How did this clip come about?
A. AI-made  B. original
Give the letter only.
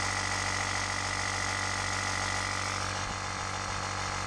B